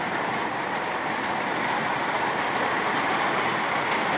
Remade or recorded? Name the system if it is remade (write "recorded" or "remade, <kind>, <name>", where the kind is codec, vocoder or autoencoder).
recorded